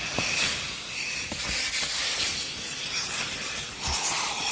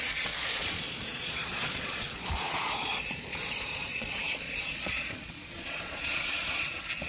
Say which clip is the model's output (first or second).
second